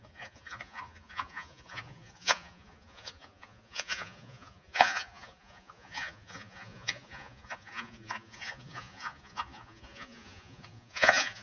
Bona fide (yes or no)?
no